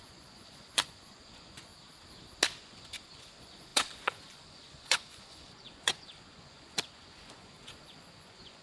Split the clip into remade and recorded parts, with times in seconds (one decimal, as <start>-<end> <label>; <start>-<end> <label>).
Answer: 0.0-1.7 remade; 1.7-2.6 recorded; 2.6-8.6 remade